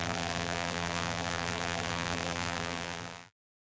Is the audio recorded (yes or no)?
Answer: no